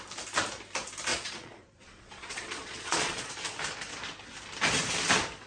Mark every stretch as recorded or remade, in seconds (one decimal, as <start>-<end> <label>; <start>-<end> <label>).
0.0-1.1 recorded; 1.1-3.3 remade; 3.3-5.5 recorded